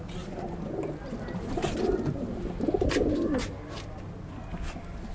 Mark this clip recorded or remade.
recorded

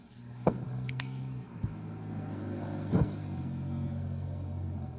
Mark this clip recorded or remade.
remade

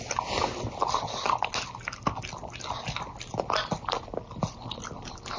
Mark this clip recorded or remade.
recorded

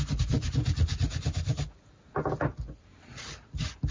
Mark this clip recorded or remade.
recorded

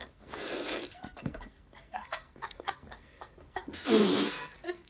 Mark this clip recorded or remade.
remade